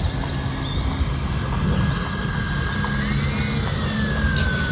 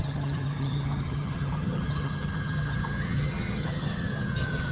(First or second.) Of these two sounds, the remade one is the second